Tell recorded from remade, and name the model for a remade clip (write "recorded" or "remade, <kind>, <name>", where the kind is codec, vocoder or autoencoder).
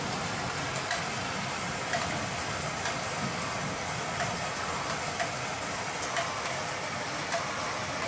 recorded